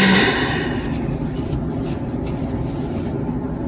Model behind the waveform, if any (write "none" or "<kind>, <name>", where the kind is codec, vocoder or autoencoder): none